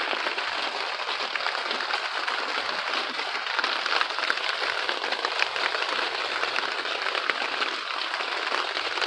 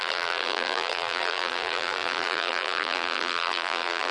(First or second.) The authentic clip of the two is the first